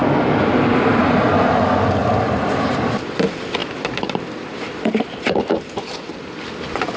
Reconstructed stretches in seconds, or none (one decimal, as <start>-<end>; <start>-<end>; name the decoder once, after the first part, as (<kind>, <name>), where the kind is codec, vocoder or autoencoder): 2.0-2.7 (vocoder, BigVGAN v2); 3.6-6.2